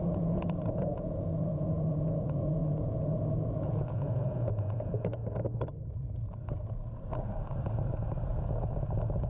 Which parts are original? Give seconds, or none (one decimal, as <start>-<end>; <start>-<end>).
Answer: 5.2-9.3